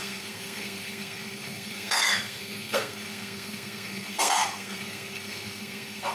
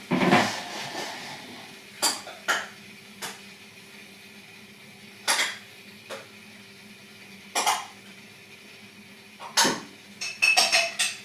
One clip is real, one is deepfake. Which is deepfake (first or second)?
first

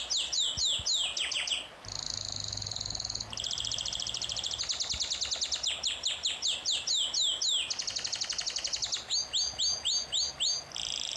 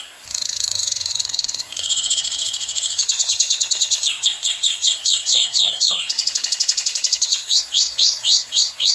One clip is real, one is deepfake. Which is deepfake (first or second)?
second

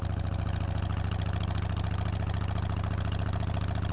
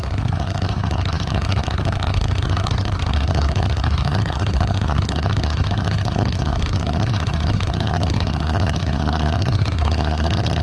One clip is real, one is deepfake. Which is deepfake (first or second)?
second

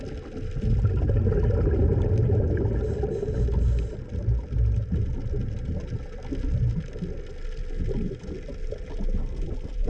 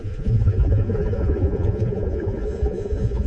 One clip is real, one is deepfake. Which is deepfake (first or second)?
second